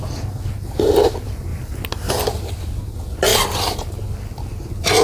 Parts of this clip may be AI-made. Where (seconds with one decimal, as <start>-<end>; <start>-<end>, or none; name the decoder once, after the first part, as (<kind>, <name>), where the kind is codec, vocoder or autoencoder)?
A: none